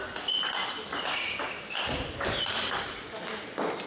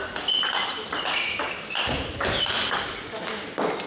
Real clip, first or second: first